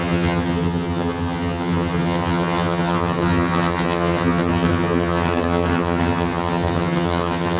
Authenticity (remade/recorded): remade